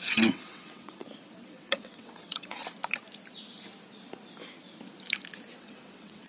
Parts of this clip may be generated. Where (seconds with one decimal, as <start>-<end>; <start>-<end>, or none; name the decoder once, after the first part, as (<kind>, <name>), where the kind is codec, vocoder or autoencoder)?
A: 0.0-1.0 (vocoder, WaveNeXt); 1.5-2.6; 5.6-6.3